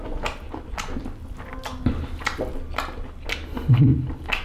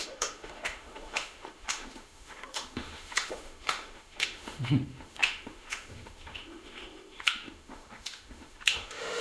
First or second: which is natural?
first